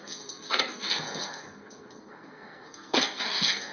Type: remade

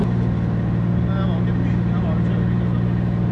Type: recorded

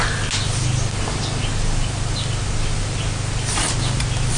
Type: recorded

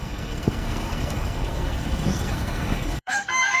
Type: remade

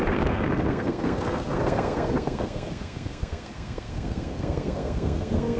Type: remade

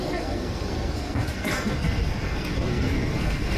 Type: remade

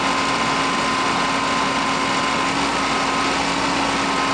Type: recorded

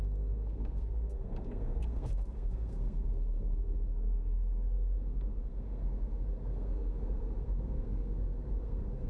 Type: remade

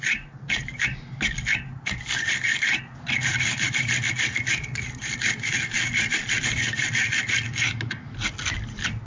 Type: recorded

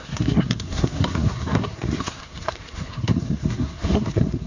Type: remade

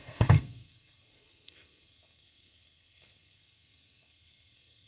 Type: remade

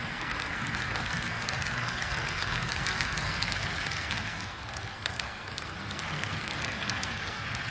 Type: remade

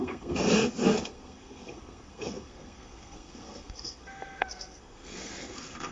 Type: remade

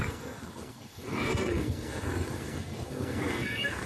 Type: remade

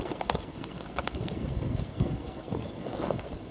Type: remade